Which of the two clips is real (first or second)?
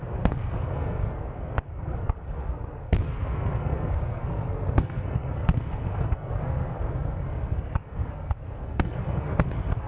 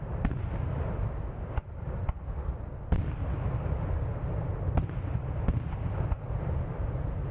second